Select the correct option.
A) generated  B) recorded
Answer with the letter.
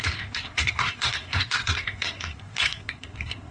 A